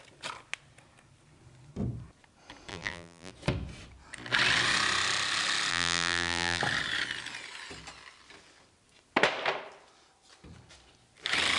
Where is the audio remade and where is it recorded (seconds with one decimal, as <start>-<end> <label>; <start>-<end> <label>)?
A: 0.0-2.7 recorded; 2.7-3.3 remade; 3.3-5.7 recorded; 5.7-6.6 remade; 6.6-11.6 recorded